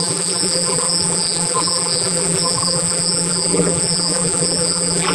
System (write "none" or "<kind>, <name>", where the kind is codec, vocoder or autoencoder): vocoder, BigVGAN v2